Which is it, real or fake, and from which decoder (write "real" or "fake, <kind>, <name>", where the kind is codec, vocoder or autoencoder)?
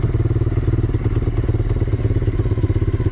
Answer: real